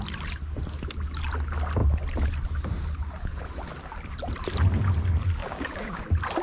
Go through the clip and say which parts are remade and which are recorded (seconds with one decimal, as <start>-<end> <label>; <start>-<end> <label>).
0.0-5.4 recorded; 5.4-6.0 remade; 6.0-6.4 recorded